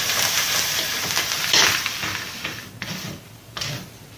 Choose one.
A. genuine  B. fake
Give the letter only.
A